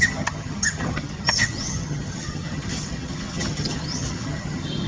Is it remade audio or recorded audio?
remade